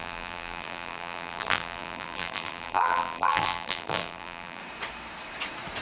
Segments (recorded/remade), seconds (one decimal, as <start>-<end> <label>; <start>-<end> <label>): 0.0-4.6 remade; 4.6-5.8 recorded